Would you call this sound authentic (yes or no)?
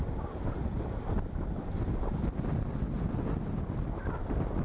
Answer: yes